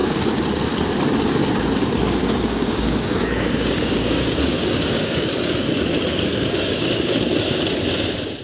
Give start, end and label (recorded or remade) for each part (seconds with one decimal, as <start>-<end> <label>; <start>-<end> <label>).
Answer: 0.0-2.2 recorded; 2.2-7.2 remade; 7.2-8.4 recorded